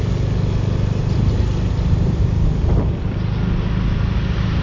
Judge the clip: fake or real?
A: real